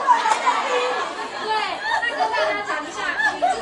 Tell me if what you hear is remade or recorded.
recorded